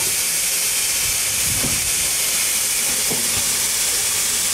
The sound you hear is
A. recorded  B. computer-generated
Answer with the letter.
A